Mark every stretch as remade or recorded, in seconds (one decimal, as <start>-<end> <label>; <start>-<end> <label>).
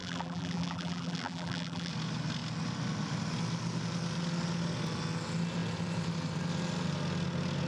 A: 0.0-1.9 remade; 1.9-7.7 recorded